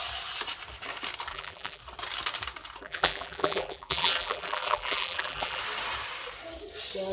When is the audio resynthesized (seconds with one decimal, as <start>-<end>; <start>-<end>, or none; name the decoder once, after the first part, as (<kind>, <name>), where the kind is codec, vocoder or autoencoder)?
1.3-1.8 (vocoder, BigVGAN v2); 2.8-5.6